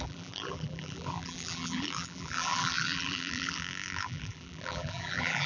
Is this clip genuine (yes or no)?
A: no